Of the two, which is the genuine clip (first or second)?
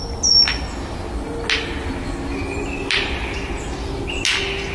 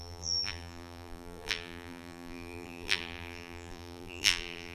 first